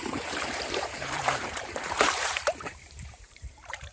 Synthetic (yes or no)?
yes